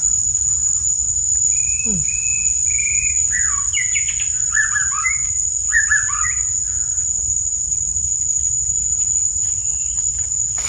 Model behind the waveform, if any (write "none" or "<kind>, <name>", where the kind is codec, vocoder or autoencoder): none